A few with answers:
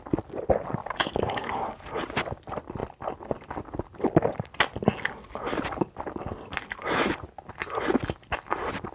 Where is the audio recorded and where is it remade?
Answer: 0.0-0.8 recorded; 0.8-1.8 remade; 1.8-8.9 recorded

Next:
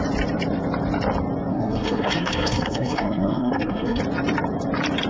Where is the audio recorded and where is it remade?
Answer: 0.0-1.5 recorded; 1.5-4.0 remade; 4.0-5.1 recorded

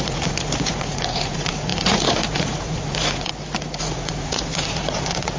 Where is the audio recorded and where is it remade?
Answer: 0.0-3.3 remade; 3.3-3.8 recorded; 3.8-5.4 remade

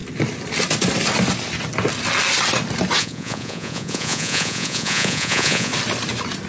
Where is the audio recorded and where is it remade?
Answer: 0.0-3.0 recorded; 3.0-5.7 remade; 5.7-6.5 recorded

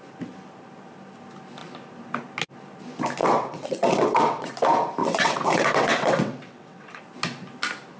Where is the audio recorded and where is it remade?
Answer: 0.0-3.2 recorded; 3.2-4.5 remade; 4.5-5.0 recorded; 5.0-7.0 remade; 7.0-8.0 recorded

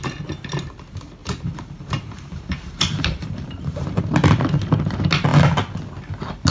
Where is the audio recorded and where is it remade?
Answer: 0.0-1.2 recorded; 1.2-4.0 remade; 4.0-6.5 recorded